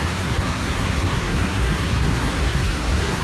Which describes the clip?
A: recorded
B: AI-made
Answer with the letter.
B